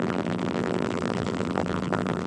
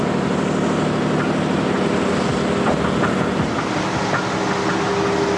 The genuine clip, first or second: second